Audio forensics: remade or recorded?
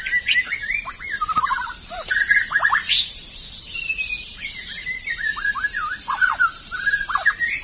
remade